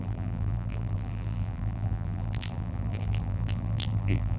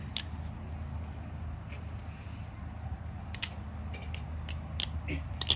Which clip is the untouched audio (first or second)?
second